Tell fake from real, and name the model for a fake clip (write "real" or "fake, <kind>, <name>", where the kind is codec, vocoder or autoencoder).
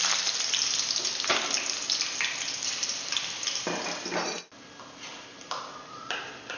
real